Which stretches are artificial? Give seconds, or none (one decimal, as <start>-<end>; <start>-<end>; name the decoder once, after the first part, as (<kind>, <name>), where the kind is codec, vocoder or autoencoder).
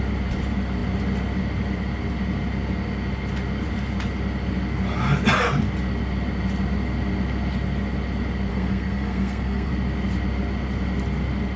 8.5-9.7 (codec, SNAC)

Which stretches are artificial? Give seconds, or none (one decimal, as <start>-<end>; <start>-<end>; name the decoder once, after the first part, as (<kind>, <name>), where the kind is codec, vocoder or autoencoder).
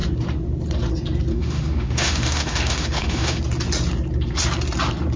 1.3-3.4 (autoencoder, DAC-VAE)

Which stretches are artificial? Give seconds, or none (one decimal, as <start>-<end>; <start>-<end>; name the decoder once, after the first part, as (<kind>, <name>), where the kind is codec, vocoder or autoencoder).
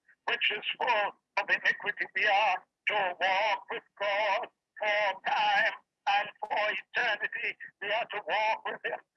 0.0-0.7 (vocoder, Vocos); 3.0-6.6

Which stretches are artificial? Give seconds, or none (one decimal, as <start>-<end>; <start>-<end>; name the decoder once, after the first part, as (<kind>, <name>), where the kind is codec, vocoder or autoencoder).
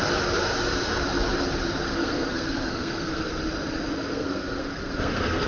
1.8-3.4 (codec, SNAC); 4.1-5.5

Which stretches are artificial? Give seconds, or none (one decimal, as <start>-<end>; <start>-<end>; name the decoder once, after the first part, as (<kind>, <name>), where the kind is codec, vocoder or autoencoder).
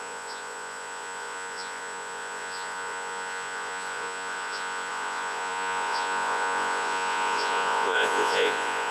0.0-8.9 (vocoder, Vocos)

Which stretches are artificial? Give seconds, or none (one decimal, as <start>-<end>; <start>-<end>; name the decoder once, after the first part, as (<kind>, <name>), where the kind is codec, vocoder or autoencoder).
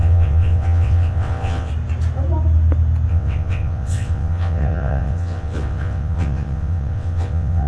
0.0-1.7 (vocoder, WaveNeXt); 3.1-7.7